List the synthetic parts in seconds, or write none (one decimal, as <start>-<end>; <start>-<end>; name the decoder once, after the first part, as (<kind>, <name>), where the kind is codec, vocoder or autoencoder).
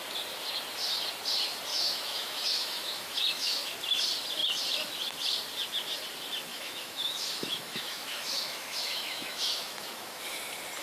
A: 1.7-3.7 (autoencoder, DAC-VAE); 6.5-10.2